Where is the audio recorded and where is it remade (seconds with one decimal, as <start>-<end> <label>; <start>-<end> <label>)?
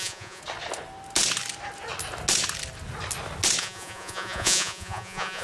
0.0-0.4 remade; 0.4-3.6 recorded; 3.6-5.4 remade